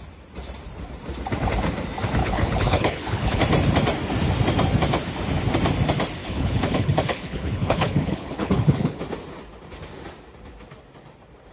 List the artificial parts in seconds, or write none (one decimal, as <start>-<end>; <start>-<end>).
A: 2.2-3.4; 6.2-9.0